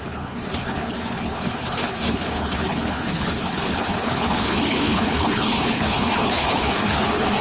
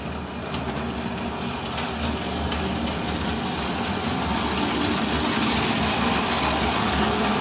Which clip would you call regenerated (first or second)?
first